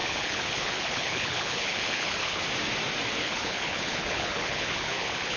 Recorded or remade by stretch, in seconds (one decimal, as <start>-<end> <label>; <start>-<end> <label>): 0.0-2.4 remade; 2.4-3.2 recorded; 3.2-5.4 remade